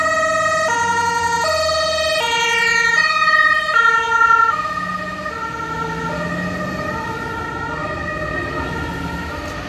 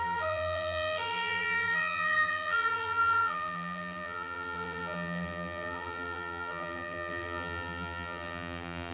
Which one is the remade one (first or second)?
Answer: second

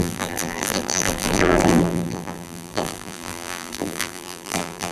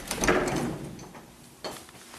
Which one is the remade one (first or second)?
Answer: first